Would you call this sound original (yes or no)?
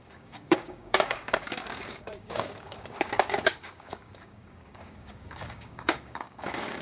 no